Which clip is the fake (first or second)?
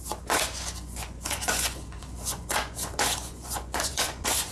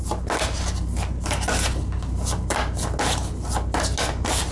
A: first